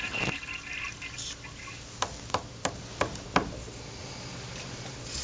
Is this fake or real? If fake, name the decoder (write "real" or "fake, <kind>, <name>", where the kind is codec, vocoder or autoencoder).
real